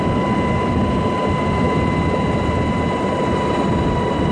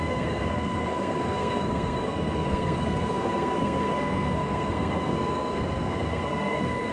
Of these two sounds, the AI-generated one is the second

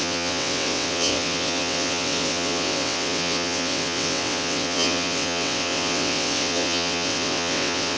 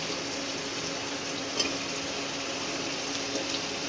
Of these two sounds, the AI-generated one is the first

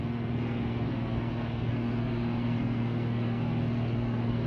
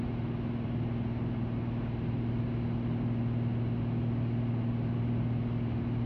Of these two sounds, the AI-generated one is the first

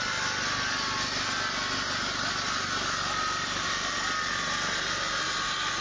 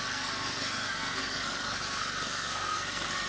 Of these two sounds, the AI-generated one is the second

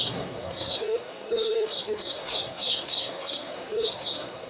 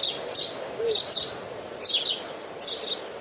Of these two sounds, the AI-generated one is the first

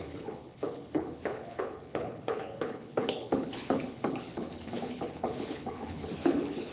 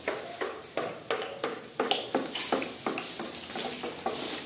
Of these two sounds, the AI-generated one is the first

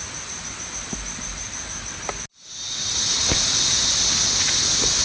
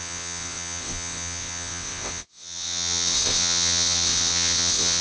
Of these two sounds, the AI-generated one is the second